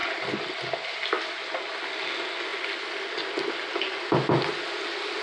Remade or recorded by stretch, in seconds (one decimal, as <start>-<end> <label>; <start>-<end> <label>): 0.0-5.2 recorded